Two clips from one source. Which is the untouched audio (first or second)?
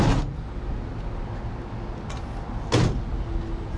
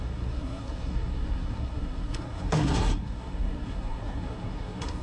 first